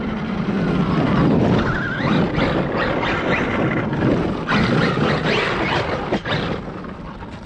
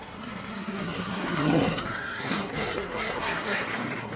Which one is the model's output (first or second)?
second